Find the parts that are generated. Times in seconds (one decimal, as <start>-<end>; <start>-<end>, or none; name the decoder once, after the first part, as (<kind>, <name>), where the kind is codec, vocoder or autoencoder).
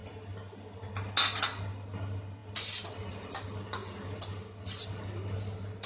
none